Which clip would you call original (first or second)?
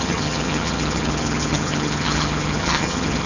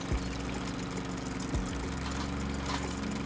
second